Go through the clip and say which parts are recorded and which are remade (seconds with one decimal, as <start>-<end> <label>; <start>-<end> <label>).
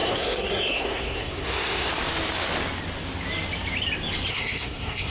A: 0.0-1.9 remade; 1.9-4.3 recorded; 4.3-5.1 remade